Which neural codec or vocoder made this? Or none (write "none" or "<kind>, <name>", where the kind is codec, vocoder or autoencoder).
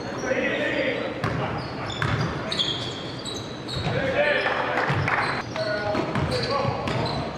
none